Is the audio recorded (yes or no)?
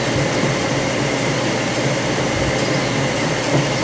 yes